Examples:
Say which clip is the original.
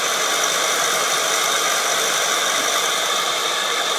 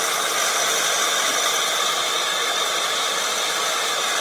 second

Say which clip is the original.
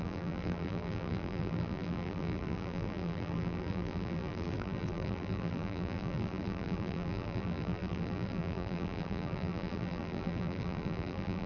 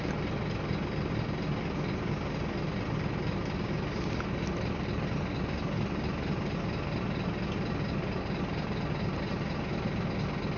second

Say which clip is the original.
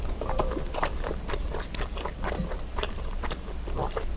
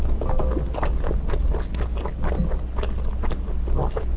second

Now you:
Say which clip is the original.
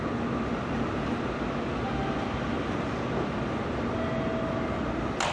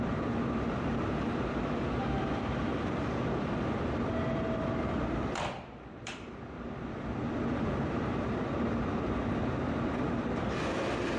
first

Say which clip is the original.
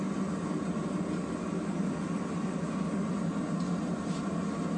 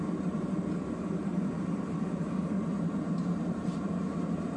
first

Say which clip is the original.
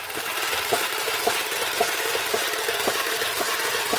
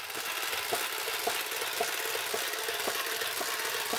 second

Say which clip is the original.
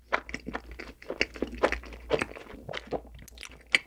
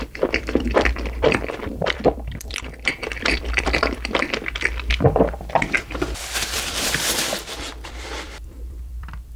first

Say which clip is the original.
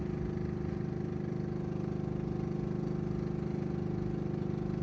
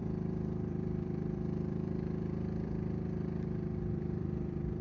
first